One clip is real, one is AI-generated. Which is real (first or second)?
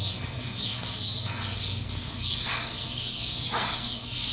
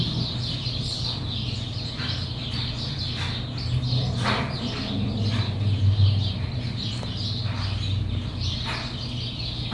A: second